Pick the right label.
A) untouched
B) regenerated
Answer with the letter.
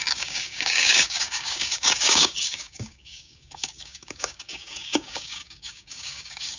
B